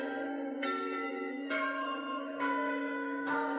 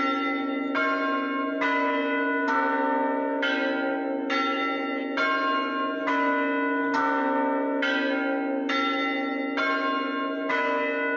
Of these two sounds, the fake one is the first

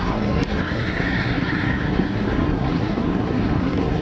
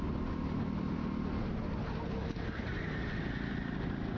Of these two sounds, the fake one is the first